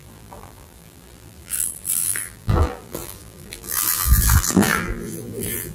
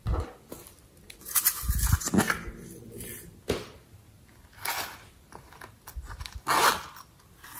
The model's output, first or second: first